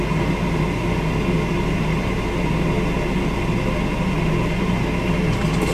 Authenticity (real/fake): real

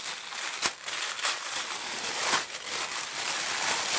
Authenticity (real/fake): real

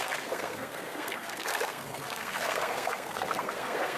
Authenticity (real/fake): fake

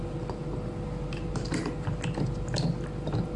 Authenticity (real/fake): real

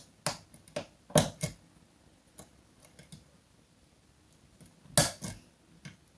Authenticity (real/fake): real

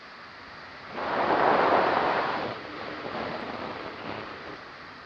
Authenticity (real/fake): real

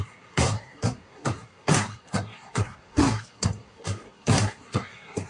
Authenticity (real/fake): fake